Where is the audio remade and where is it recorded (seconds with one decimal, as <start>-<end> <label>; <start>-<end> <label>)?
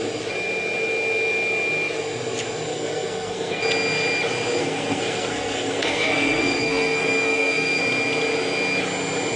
0.0-2.7 recorded; 2.7-3.6 remade; 3.6-4.6 recorded; 4.6-7.8 remade; 7.8-9.4 recorded